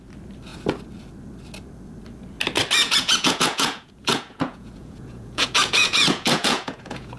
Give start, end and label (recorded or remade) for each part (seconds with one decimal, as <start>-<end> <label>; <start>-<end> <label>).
0.0-2.8 recorded; 2.8-7.2 remade